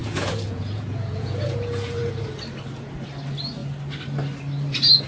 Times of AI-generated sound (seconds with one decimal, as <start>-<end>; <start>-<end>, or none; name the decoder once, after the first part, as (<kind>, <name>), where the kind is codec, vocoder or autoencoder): 0.0-2.2 (vocoder, Vocos)